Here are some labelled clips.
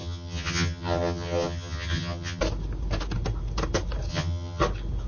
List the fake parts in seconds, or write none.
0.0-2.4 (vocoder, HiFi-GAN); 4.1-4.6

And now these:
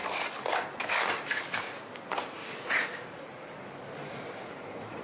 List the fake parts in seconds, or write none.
2.4-3.6 (vocoder, Vocos); 4.0-5.0

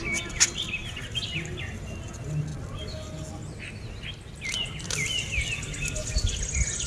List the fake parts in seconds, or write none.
none

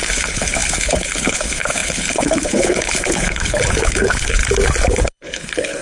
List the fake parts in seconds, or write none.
0.0-4.4 (codec, HILCodec); 4.9-5.8

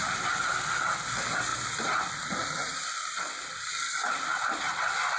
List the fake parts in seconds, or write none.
none

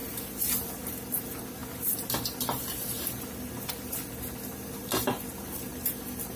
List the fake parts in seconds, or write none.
none